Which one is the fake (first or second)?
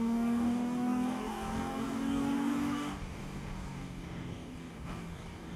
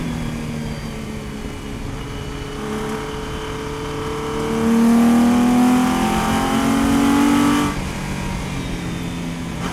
first